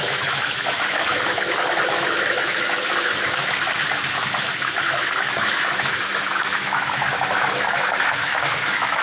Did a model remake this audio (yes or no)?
yes